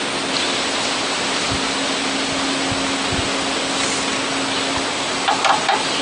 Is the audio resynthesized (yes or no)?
no